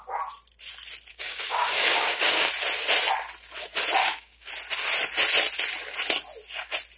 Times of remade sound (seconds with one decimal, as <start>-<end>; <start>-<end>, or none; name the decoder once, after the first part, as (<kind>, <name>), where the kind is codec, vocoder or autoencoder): 1.1-2.5 (codec, DAC); 4.0-4.5